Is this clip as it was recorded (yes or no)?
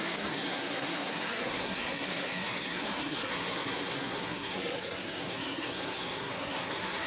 no